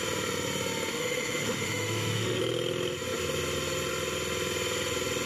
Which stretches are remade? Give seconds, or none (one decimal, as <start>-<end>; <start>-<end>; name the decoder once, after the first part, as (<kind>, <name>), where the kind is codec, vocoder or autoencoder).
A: 0.9-2.4 (autoencoder, DAC-VAE)

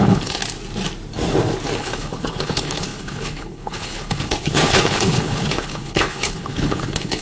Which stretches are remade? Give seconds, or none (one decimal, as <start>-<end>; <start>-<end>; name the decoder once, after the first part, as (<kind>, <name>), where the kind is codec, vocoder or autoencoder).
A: 0.0-0.4 (codec, HILCodec); 1.8-7.2

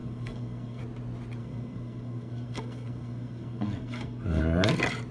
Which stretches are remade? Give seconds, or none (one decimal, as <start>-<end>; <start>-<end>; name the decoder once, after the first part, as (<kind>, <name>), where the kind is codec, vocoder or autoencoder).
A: 0.0-0.8 (codec, SNAC); 1.4-4.4

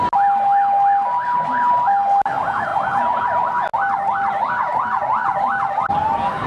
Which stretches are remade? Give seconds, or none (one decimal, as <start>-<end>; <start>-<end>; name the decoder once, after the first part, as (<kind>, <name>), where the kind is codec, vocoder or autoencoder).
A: none